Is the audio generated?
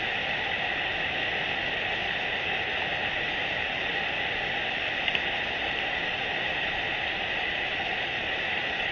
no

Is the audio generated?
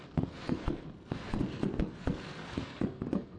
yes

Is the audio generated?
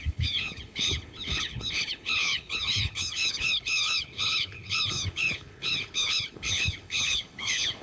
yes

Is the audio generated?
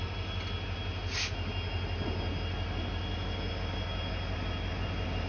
no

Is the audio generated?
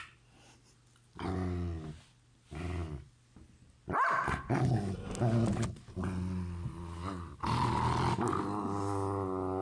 no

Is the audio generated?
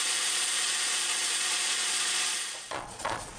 yes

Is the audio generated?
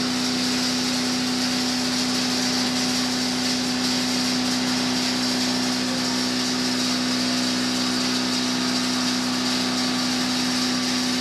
no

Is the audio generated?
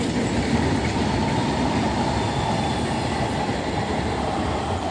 no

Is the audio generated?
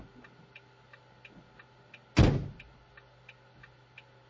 no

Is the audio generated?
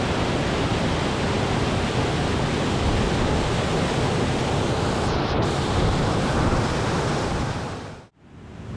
no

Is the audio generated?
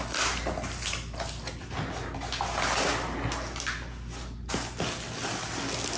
no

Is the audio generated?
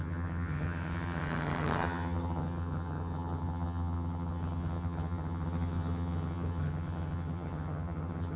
yes